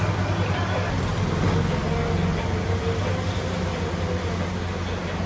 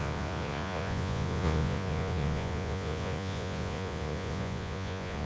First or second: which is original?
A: first